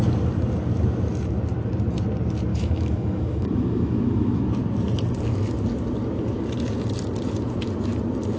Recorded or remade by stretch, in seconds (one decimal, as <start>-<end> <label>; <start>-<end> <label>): 0.0-2.5 recorded; 2.5-4.4 remade; 4.4-8.4 recorded